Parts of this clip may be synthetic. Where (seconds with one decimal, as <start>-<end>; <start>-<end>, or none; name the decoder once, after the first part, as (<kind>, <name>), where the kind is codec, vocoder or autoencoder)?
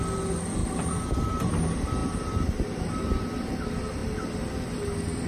0.6-1.5 (vocoder, BigVGAN v2); 2.0-2.8